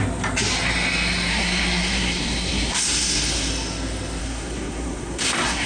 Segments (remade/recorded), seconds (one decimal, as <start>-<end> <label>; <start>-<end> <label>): 0.0-1.3 recorded; 1.3-3.5 remade; 3.5-4.2 recorded; 4.2-5.7 remade